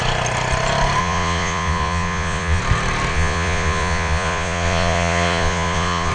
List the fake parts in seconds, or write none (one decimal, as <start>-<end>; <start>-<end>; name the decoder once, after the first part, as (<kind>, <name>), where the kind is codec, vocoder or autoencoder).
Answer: 1.0-2.6 (vocoder, Vocos); 3.1-6.1